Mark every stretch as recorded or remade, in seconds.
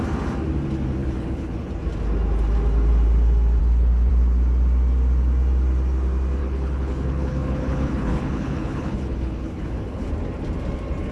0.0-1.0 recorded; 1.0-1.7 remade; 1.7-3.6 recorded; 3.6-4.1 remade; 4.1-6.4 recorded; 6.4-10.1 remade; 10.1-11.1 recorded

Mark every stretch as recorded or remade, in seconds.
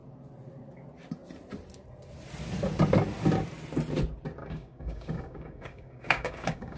0.0-4.4 recorded; 4.4-6.8 remade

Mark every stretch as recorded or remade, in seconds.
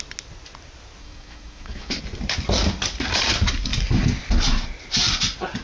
0.0-1.0 recorded; 1.0-2.0 remade; 2.0-5.6 recorded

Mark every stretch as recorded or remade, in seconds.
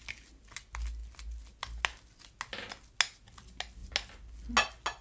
0.0-5.0 recorded